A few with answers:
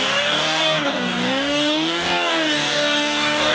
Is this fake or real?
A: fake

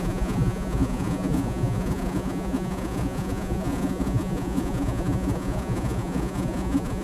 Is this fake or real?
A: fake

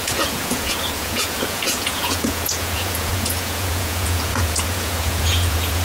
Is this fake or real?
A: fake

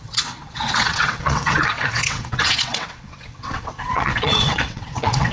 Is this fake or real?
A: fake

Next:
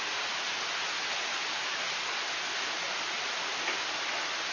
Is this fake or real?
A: real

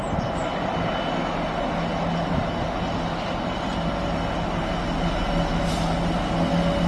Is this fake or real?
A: real